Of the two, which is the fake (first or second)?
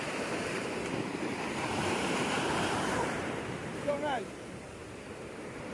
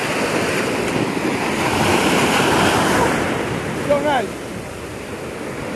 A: first